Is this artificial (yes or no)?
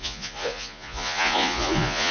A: yes